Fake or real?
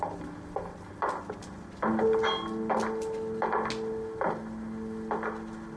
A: real